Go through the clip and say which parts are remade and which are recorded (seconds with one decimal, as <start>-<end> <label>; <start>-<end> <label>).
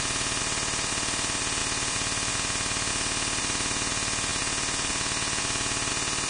0.0-6.3 recorded